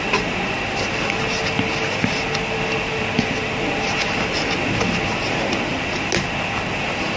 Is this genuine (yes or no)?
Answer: yes